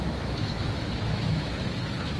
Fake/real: fake